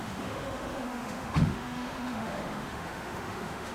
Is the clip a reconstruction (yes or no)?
yes